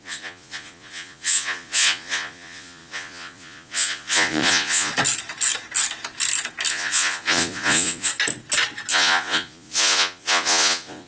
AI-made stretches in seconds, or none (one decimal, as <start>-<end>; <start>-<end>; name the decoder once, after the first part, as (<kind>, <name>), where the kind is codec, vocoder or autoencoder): 0.0-4.9 (vocoder, Vocos); 6.7-8.1; 8.9-11.1